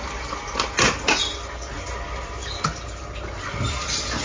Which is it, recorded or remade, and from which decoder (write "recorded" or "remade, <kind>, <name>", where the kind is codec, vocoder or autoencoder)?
recorded